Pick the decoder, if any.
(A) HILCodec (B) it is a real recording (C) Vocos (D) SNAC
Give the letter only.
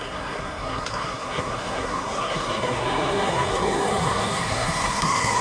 D